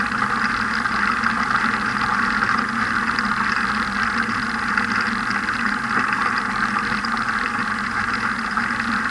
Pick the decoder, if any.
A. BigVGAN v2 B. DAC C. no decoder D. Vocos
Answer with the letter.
C